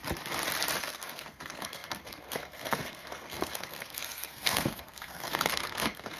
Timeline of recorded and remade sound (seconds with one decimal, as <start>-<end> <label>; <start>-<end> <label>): 0.0-0.8 recorded; 0.8-6.2 remade